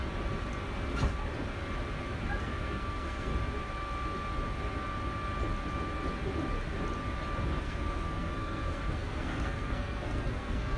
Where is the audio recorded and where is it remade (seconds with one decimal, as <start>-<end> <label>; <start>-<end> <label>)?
0.0-2.4 recorded; 2.4-3.3 remade; 3.3-7.6 recorded; 7.6-10.8 remade